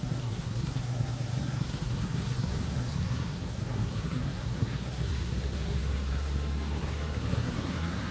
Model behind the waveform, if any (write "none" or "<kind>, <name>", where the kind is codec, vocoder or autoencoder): codec, SNAC